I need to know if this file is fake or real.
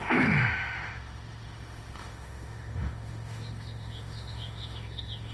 fake